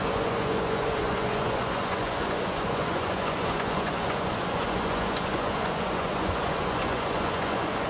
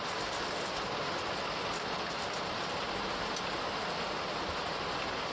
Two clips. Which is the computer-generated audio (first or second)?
first